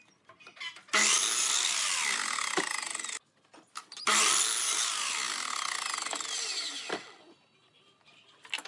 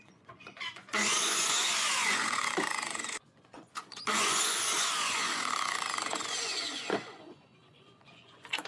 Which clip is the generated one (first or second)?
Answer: second